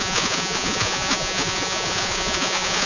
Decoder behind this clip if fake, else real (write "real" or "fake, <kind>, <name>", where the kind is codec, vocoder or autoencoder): fake, vocoder, Vocos